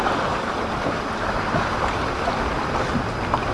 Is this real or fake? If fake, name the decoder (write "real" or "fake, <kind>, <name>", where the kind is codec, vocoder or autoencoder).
fake, vocoder, BigVGAN v2